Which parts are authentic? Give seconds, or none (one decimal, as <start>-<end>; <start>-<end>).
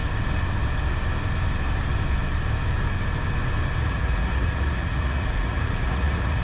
0.0-3.8